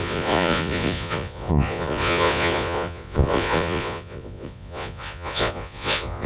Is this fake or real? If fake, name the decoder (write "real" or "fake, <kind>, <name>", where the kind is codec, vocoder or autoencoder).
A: fake, vocoder, Vocos